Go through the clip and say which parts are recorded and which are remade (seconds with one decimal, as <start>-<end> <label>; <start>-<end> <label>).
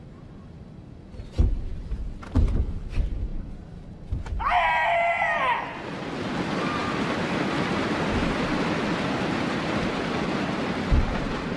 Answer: 0.0-1.7 recorded; 1.7-2.5 remade; 2.5-6.8 recorded; 6.8-9.9 remade; 9.9-11.6 recorded